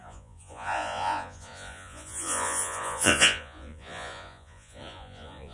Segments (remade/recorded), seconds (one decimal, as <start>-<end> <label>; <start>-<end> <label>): 0.0-5.5 remade